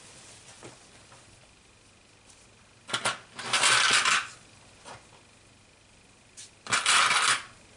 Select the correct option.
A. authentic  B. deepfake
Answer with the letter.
A